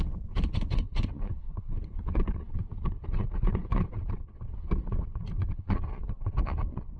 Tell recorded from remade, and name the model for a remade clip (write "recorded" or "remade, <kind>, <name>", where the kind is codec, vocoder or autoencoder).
remade, vocoder, WaveNeXt